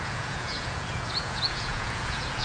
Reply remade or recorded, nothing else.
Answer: remade